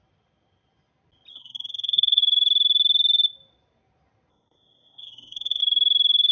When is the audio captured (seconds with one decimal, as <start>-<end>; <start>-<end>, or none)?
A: 0.0-1.3; 2.2-4.3; 5.6-6.3